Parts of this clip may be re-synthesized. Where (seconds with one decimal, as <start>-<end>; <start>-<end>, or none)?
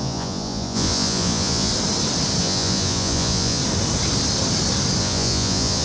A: 0.0-1.7; 2.4-3.6; 5.0-5.8